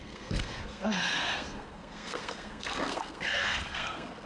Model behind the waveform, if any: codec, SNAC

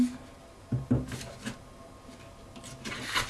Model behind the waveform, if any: none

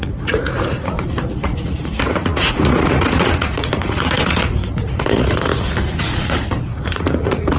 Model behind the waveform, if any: vocoder, Vocos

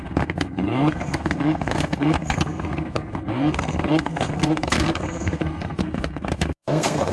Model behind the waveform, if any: codec, SNAC